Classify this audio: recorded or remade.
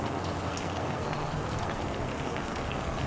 remade